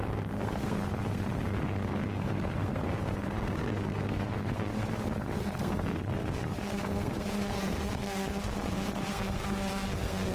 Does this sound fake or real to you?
fake